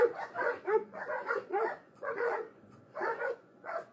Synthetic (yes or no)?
yes